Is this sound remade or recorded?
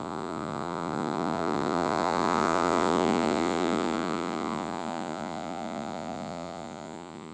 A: remade